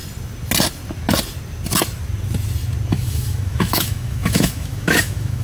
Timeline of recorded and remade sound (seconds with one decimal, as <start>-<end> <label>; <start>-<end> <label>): 0.0-2.9 recorded; 2.9-5.4 remade